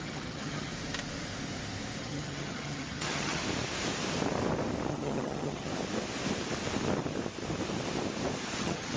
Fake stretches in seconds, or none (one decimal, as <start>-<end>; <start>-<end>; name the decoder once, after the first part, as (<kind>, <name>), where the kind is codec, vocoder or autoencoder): 0.0-0.7 (vocoder, HiFi-GAN); 2.0-3.4; 4.9-5.7; 8.6-9.0